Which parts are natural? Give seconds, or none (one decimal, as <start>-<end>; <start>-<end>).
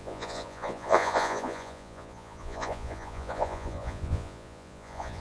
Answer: none